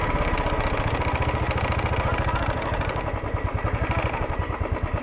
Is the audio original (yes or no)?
yes